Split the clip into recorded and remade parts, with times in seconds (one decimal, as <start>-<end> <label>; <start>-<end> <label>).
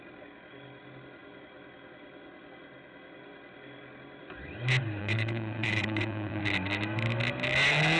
0.0-5.0 recorded; 5.0-6.4 remade; 6.4-8.0 recorded